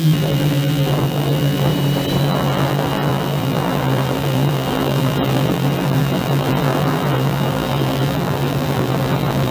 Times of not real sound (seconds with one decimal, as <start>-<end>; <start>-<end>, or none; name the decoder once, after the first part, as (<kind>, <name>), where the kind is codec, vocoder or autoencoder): 0.0-1.7 (vocoder, BigVGAN v2); 2.2-9.5